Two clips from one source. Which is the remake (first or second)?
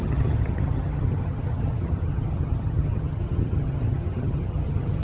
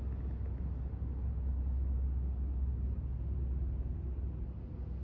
first